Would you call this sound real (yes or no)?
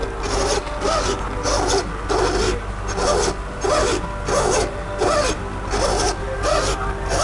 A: yes